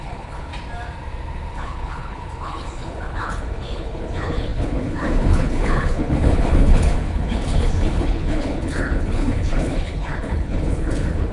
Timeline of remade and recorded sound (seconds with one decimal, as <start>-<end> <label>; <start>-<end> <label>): 0.0-0.5 remade; 0.5-1.5 recorded; 1.5-11.3 remade

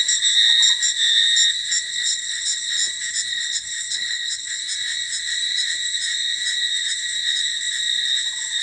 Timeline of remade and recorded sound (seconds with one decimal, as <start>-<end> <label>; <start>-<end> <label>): 0.0-1.9 recorded; 1.9-2.7 remade; 2.7-3.3 recorded; 3.3-4.6 remade; 4.6-8.6 recorded

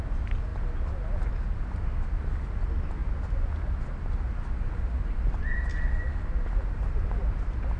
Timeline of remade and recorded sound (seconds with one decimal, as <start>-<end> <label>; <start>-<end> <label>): 0.0-7.8 recorded

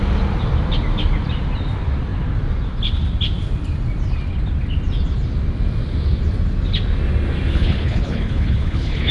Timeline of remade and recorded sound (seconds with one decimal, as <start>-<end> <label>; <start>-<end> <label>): 0.0-7.5 recorded; 7.5-9.1 remade